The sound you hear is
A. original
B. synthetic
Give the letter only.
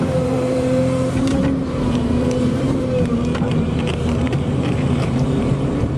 B